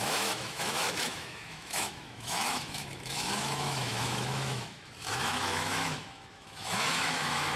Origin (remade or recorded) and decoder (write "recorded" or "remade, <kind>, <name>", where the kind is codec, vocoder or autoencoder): remade, autoencoder, DAC-VAE